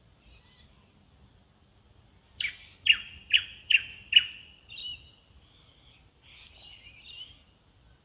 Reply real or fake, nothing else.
real